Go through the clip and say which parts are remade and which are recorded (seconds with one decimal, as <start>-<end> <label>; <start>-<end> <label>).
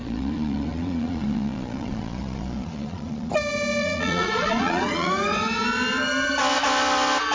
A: 0.0-3.3 remade; 3.3-3.8 recorded; 3.8-5.1 remade; 5.1-7.3 recorded